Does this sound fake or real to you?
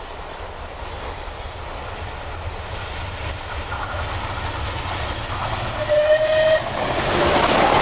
real